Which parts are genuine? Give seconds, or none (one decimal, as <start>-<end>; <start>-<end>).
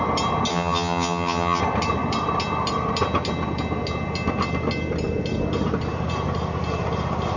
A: 0.0-0.5; 1.6-7.4